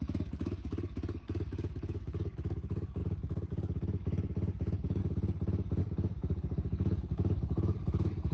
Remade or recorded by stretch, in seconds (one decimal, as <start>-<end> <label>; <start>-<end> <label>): 0.0-5.0 remade; 5.0-5.8 recorded; 5.8-8.3 remade